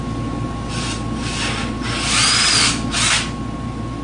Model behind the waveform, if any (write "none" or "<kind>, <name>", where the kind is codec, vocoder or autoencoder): none